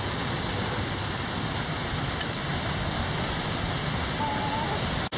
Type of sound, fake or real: real